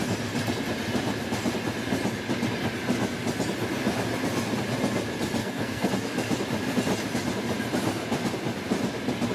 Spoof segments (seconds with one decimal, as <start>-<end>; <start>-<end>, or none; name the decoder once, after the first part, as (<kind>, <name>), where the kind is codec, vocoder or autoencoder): 5.4-5.9 (codec, SNAC)